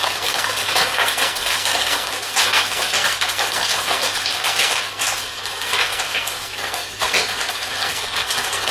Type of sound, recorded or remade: remade